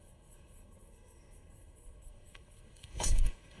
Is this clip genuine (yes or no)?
no